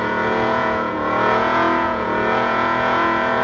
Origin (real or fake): fake